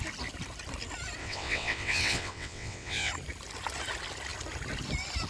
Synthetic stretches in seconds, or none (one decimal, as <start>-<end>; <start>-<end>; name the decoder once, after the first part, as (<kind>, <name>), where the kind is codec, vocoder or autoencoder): 1.2-3.1 (vocoder, WaveNeXt)